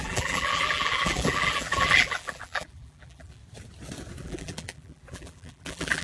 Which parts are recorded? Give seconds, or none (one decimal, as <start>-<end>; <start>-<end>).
3.4-4.2